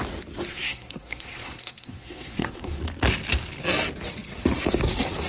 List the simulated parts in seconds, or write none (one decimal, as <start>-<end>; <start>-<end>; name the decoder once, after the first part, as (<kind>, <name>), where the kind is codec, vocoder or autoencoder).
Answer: 0.5-2.8 (codec, SNAC)